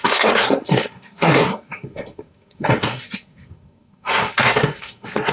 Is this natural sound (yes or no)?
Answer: no